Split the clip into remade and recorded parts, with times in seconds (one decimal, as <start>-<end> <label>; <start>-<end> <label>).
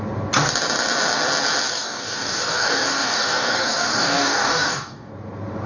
0.0-1.7 recorded; 1.7-5.1 remade; 5.1-5.7 recorded